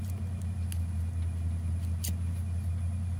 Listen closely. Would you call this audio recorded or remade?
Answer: recorded